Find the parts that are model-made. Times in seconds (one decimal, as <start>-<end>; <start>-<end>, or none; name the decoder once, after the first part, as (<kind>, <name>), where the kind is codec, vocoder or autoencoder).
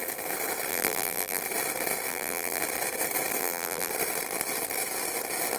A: 0.7-1.4 (vocoder, BigVGAN v2); 2.1-2.6; 3.4-3.9